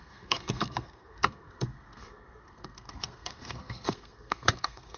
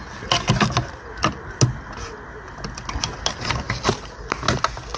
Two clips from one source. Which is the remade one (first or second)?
first